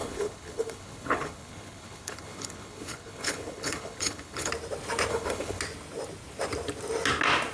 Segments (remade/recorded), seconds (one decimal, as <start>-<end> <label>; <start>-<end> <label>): 0.0-4.5 remade; 4.5-5.1 recorded; 5.1-5.6 remade; 5.6-7.5 recorded